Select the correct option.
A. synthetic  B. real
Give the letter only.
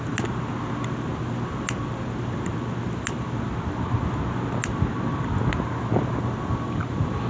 B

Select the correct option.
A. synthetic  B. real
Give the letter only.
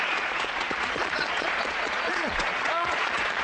A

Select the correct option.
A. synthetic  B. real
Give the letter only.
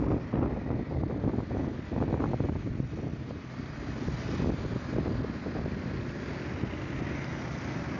B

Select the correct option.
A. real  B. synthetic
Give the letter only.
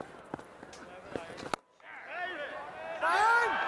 A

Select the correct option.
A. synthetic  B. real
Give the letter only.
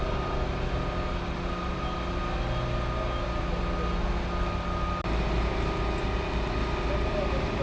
B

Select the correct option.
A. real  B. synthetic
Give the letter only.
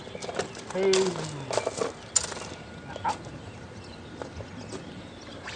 A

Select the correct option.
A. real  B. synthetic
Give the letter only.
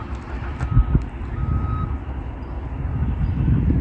A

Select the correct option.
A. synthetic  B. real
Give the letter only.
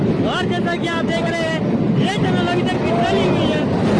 B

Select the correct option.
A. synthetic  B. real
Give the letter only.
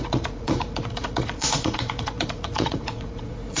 A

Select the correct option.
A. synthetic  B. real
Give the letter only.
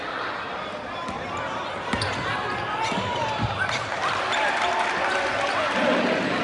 B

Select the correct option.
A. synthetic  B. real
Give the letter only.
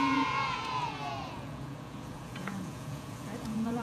A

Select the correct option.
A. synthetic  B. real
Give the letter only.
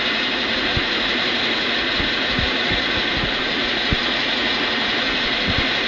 A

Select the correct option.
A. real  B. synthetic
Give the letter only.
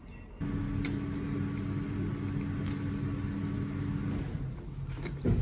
A